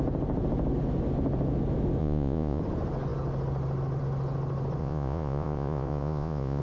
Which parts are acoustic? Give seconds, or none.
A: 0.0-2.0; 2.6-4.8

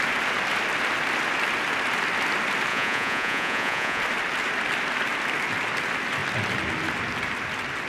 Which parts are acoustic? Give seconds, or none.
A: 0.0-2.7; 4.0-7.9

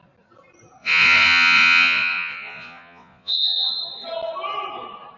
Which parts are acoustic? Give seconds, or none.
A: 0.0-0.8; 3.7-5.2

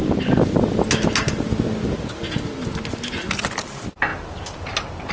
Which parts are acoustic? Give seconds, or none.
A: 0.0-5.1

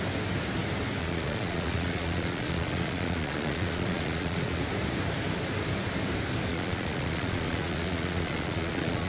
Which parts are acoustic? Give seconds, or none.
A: 0.0-1.0; 4.6-6.5

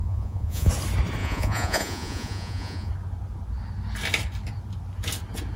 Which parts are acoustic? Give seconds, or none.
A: 0.7-1.2; 2.9-5.6

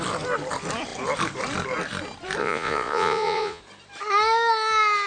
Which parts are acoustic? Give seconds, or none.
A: 0.0-2.4; 3.6-5.1

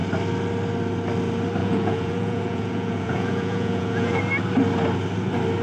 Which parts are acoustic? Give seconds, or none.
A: 0.0-1.6; 4.2-5.6